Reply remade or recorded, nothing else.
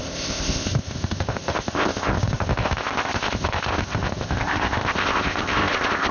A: remade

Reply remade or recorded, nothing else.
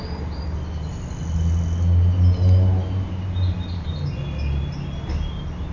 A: recorded